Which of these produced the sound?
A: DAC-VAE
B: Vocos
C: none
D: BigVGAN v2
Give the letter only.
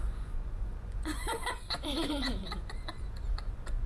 B